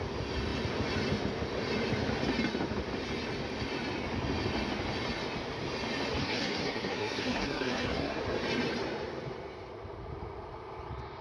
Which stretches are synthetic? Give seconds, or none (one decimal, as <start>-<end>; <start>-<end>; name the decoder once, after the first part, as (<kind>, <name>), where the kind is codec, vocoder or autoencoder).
6.2-8.2 (codec, SNAC)